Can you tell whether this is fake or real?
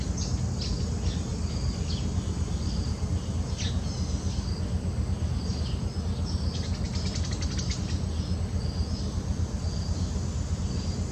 real